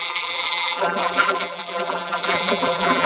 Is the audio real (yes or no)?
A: no